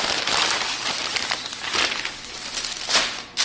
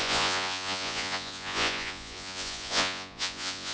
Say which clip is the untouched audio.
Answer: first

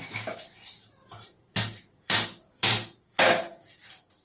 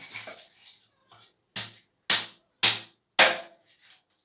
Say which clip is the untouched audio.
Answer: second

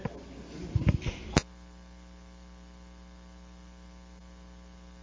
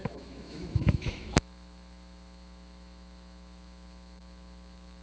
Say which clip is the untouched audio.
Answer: first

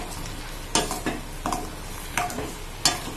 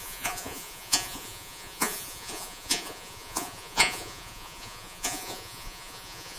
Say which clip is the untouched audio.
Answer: first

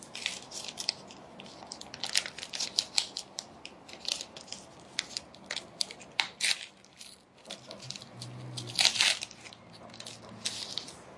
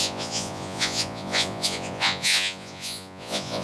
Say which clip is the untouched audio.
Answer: first